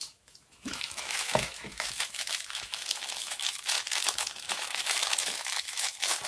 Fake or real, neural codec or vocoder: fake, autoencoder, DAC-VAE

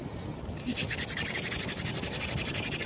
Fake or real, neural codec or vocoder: real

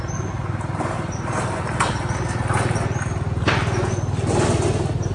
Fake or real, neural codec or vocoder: real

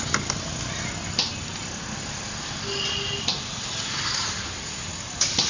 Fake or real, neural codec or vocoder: real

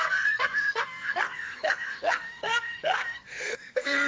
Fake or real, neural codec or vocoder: fake, codec, SNAC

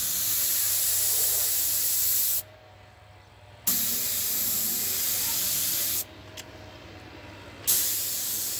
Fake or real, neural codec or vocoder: real